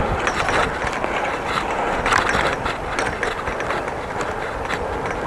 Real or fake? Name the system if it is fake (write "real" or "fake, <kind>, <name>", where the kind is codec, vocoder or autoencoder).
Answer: real